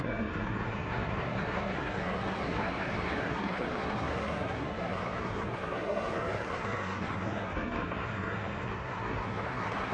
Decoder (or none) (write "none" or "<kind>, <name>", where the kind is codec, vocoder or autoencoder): codec, SNAC